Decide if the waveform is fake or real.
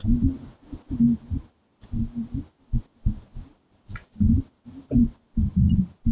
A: real